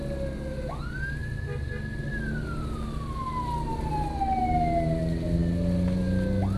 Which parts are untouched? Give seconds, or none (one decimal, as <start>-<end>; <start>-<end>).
0.0-6.6